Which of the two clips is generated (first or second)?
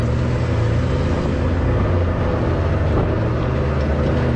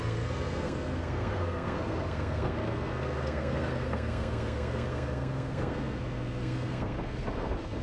second